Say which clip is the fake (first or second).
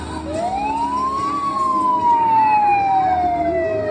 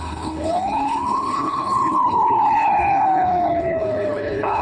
second